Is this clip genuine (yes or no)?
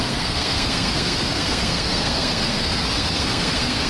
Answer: no